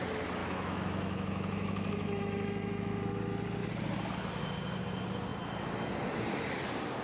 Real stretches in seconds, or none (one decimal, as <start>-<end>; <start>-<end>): 0.0-0.4; 3.0-7.0